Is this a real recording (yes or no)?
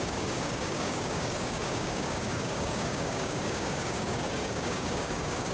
no